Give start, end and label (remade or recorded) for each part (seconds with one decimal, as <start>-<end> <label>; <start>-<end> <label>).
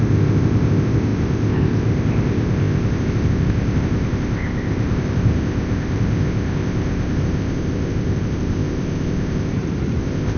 0.0-9.5 remade; 9.5-10.0 recorded; 10.0-10.4 remade